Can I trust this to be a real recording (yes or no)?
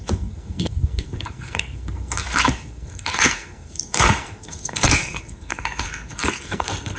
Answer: no